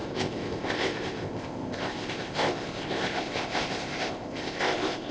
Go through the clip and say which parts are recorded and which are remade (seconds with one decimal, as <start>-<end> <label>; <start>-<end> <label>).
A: 0.0-5.1 remade